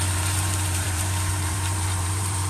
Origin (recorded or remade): remade